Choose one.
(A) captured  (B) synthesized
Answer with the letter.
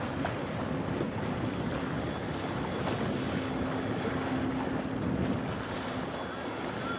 A